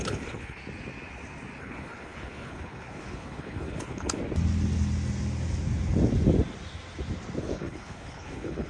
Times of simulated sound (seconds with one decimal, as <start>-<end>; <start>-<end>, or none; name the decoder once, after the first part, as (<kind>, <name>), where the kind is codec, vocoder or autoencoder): 0.0-0.6 (codec, HILCodec); 1.6-4.2; 7.4-8.7

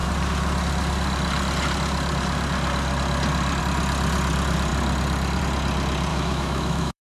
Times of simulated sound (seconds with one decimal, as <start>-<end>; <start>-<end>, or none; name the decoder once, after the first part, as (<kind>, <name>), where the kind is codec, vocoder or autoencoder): 6.1-7.0 (autoencoder, DAC-VAE)

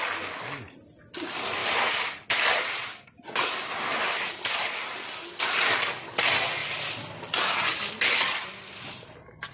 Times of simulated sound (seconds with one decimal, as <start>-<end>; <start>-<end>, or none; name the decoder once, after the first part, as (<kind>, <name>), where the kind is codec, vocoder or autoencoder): none

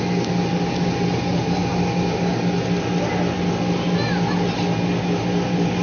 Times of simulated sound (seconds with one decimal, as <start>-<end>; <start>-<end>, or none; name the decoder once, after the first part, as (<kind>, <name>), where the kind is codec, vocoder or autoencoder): none

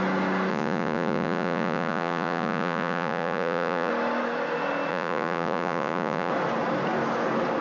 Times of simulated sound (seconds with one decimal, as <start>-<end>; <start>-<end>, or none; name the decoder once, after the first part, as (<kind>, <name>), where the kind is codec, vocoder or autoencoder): 0.5-3.9 (vocoder, Vocos); 4.9-6.3

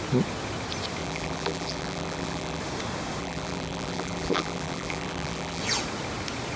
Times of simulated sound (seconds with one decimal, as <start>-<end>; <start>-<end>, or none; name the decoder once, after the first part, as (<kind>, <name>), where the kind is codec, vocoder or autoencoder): 1.0-2.6 (vocoder, BigVGAN v2); 3.2-5.6